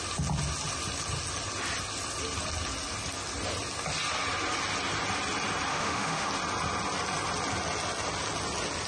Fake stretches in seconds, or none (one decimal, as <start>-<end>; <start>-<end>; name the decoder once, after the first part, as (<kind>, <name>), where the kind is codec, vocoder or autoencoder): 5.7-6.3 (autoencoder, DAC-VAE)